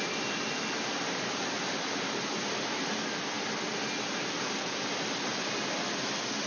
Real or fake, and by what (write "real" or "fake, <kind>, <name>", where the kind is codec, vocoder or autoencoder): real